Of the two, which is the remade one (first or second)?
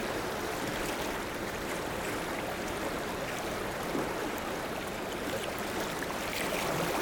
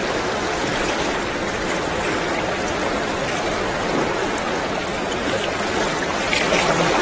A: first